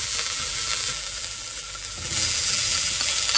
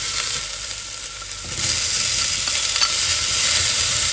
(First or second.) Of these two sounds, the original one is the second